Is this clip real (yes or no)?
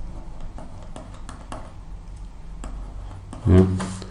yes